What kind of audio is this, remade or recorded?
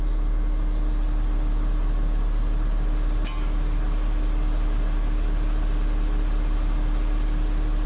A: recorded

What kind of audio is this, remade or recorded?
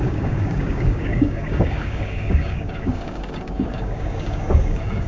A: remade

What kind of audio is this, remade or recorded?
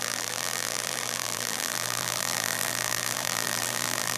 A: remade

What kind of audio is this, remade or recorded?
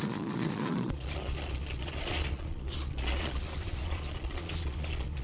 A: remade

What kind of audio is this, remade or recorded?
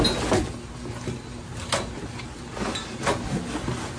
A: recorded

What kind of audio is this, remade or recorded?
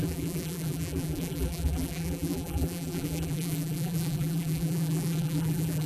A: remade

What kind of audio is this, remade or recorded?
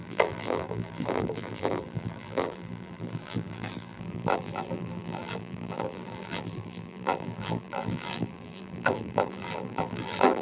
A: remade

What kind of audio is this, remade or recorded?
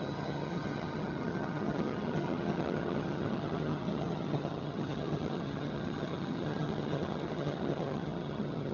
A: remade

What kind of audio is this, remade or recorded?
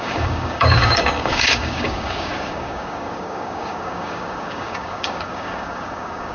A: remade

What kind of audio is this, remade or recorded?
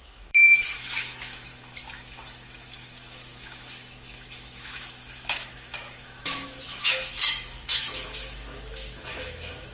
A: remade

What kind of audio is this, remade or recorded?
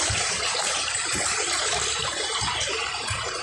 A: remade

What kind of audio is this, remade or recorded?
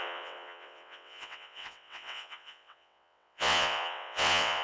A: remade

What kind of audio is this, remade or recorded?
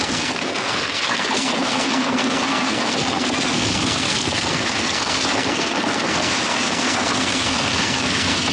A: remade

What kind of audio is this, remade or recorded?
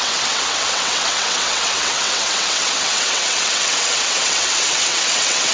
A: remade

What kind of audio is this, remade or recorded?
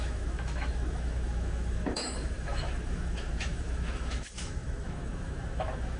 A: remade